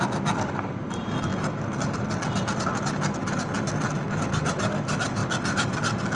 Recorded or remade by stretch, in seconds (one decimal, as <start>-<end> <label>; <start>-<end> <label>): 0.0-6.2 recorded